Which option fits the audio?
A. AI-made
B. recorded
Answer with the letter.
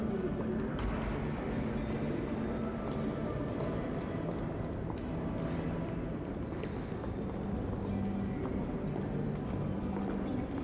B